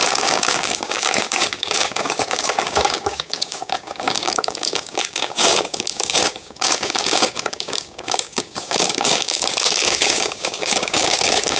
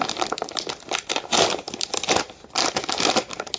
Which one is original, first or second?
second